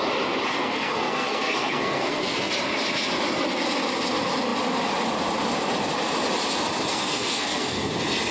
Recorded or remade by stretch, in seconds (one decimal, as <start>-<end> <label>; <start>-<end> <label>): 0.0-0.5 recorded; 0.5-2.5 remade; 2.5-6.9 recorded; 6.9-7.9 remade; 7.9-8.3 recorded